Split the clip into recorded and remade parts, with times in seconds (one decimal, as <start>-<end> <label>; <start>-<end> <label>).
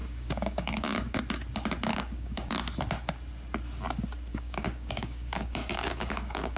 0.0-1.2 remade; 1.2-1.9 recorded; 1.9-2.5 remade; 2.5-4.3 recorded; 4.3-6.6 remade